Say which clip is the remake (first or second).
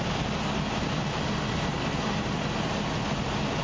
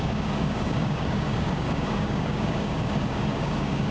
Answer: second